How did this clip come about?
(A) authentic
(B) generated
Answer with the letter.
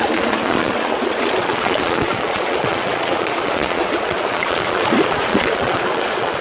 B